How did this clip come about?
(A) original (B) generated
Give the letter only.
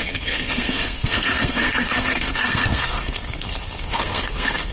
B